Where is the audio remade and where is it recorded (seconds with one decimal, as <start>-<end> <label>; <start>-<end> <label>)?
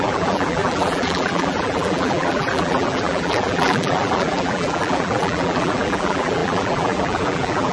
0.0-7.7 remade